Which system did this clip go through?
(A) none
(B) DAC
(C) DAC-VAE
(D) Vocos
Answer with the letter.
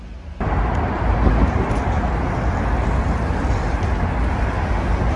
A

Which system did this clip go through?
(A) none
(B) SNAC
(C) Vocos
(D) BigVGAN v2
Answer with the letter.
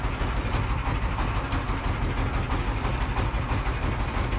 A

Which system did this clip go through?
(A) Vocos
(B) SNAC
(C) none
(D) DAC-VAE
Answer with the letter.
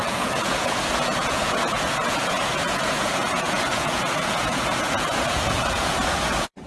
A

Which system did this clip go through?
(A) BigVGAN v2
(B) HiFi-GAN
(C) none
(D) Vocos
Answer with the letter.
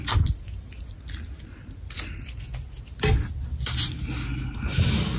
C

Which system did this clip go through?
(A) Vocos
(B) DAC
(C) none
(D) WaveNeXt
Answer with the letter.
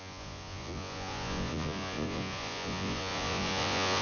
A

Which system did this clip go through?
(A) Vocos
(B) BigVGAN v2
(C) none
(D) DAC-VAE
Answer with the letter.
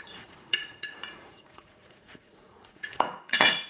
A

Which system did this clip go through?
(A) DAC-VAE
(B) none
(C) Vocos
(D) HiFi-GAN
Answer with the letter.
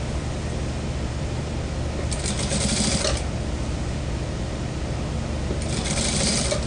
B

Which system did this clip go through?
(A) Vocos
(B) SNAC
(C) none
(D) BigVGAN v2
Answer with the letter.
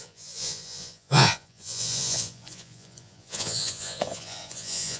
A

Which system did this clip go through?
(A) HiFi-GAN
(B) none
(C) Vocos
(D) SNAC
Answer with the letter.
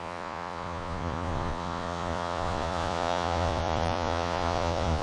C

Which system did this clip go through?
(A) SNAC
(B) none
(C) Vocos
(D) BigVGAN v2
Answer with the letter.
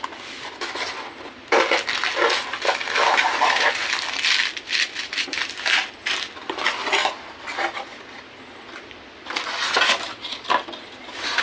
B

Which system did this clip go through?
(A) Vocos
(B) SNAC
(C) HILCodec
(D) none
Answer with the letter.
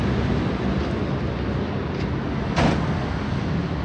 D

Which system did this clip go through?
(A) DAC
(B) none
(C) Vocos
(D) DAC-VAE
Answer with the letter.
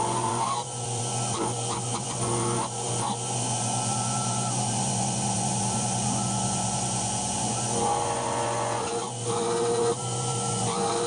C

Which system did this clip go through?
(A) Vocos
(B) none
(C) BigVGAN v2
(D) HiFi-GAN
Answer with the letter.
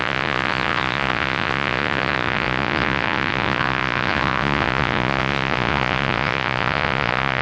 A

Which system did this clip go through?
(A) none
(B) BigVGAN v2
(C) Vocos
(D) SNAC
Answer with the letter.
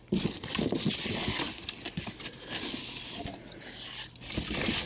A